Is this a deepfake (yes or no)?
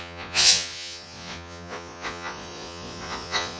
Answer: yes